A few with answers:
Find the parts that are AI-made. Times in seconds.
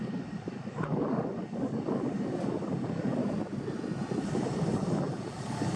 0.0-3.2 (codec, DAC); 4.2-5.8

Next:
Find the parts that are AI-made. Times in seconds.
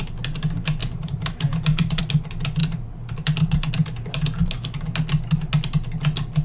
0.8-2.0 (vocoder, BigVGAN v2); 2.6-3.7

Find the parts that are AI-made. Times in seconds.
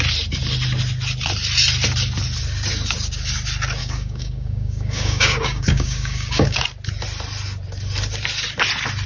3.8-6.6 (codec, DAC)